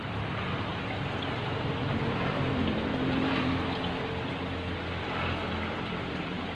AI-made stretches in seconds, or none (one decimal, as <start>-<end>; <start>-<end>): 0.0-0.7; 1.4-3.5; 6.1-6.5